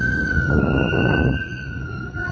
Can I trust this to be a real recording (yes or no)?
no